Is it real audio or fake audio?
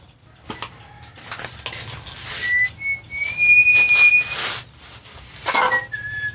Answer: real